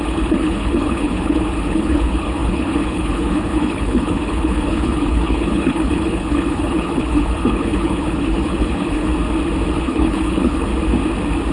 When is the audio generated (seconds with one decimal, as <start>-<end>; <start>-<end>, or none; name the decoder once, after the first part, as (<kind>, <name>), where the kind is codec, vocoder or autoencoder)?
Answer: 0.0-9.1 (codec, HILCodec); 9.7-10.7